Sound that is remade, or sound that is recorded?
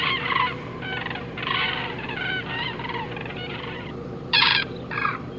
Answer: remade